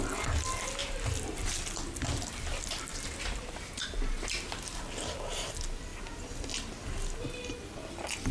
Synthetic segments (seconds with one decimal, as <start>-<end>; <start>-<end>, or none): 0.8-1.5; 2.9-3.7